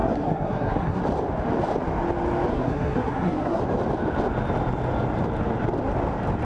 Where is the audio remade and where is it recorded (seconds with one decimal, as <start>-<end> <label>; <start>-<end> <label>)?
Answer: 0.0-1.0 remade; 1.0-2.5 recorded; 2.5-3.6 remade; 3.6-6.4 recorded